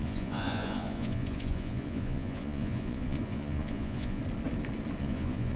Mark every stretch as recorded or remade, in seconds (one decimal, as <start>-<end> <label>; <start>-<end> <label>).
0.0-4.2 remade; 4.2-5.0 recorded; 5.0-5.6 remade